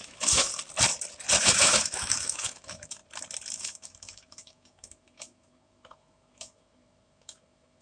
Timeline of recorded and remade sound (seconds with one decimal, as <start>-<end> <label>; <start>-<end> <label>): 0.0-0.5 remade; 0.5-1.4 recorded; 1.4-3.0 remade; 3.0-3.5 recorded; 3.5-7.8 remade